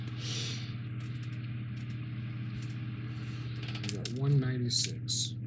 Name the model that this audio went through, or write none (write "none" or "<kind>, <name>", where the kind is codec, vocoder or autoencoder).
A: none